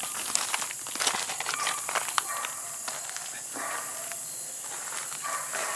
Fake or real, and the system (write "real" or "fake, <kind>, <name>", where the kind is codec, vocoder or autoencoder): real